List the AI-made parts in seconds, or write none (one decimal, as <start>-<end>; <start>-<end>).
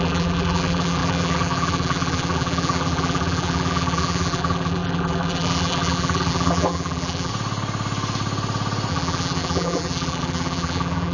0.0-7.3; 8.9-11.1